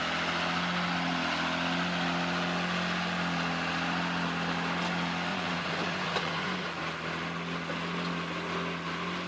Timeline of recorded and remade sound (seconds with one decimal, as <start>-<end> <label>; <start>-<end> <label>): 0.0-5.3 recorded; 5.3-6.8 remade; 6.8-9.3 recorded